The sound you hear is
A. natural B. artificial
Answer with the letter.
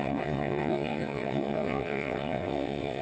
B